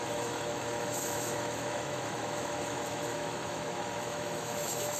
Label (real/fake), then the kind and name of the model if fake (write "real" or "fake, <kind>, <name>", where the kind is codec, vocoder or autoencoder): fake, autoencoder, DAC-VAE